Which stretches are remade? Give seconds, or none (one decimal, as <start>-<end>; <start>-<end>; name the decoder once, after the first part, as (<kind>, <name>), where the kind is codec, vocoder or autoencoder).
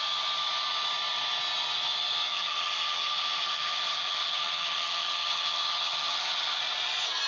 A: 2.3-6.6 (vocoder, HiFi-GAN)